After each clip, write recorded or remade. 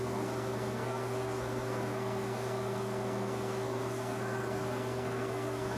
remade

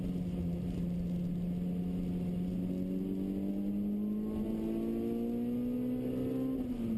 recorded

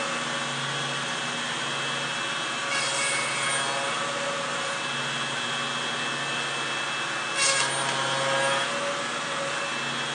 recorded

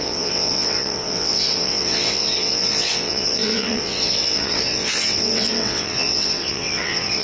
remade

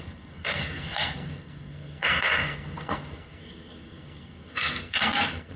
remade